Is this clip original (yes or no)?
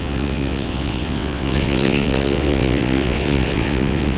no